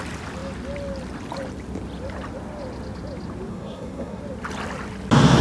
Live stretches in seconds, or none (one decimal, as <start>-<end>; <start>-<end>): 0.0-3.5; 4.2-5.4